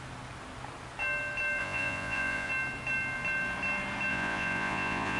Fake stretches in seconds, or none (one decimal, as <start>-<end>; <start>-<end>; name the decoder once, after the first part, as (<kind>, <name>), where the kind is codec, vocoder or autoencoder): 1.6-2.5 (vocoder, Vocos); 4.1-5.2